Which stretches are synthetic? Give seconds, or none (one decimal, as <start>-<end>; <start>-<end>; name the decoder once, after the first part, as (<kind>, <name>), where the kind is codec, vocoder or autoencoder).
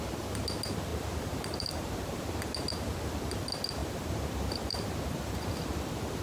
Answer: 0.9-2.2 (vocoder, BigVGAN v2); 3.8-5.5